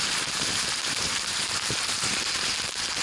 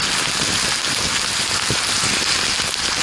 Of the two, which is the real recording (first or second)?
second